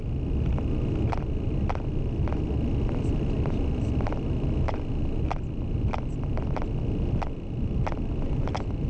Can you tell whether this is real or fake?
real